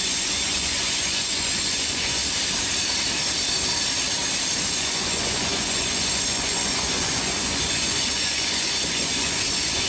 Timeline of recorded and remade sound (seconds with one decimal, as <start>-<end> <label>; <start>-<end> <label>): 0.0-2.2 remade; 2.2-4.7 recorded; 4.7-9.9 remade